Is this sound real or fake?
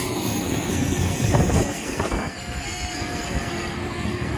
fake